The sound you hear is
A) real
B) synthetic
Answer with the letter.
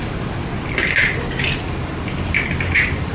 A